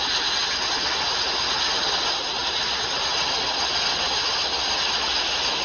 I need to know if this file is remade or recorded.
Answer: recorded